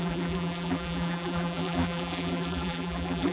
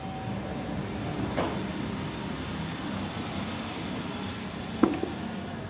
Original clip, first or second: second